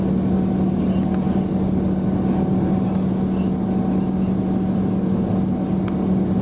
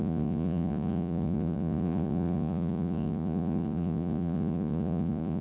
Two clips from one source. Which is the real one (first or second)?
first